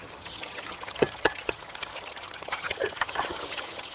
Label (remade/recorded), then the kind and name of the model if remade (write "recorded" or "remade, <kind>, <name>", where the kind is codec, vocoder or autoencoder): remade, vocoder, HiFi-GAN